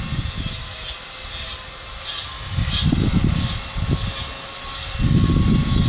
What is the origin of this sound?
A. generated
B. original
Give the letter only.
B